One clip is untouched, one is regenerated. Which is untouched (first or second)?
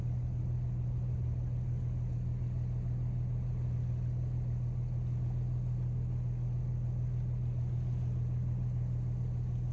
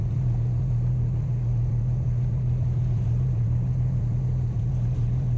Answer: first